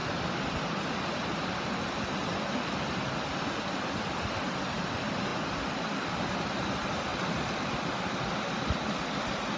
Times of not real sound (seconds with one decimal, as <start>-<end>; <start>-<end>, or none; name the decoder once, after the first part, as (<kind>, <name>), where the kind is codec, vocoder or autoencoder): none